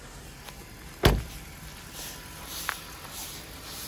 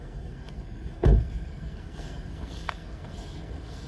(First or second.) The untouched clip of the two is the first